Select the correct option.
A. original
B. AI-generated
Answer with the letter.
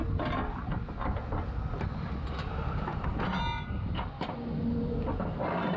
A